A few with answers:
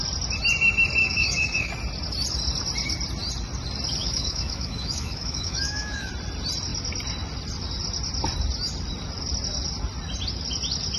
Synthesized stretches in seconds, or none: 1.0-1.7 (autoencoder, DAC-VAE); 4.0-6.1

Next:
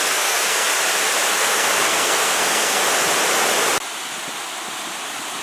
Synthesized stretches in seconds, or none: 0.0-0.7 (codec, SNAC); 1.3-2.8

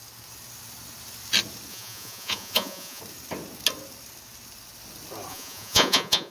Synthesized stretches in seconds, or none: 1.7-3.0 (vocoder, Vocos); 5.3-6.3

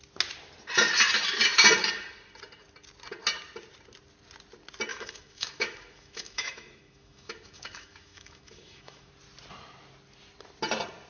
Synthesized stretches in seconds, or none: 4.9-9.1 (autoencoder, DAC-VAE)

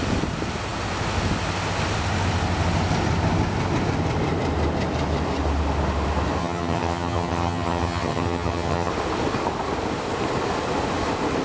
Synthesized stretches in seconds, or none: 6.4-8.9 (vocoder, HiFi-GAN)